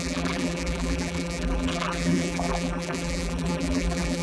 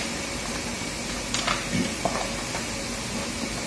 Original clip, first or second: second